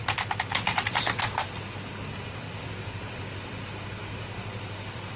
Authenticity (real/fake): fake